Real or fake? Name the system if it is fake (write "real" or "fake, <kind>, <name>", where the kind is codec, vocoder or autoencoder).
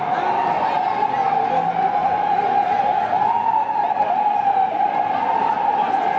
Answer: real